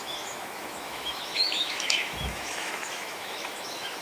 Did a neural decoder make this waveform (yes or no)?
yes